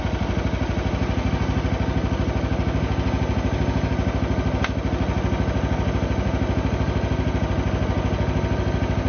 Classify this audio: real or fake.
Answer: real